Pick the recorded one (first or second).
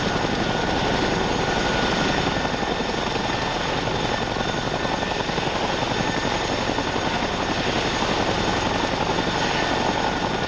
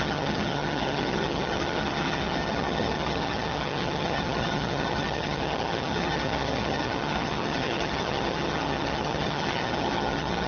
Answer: first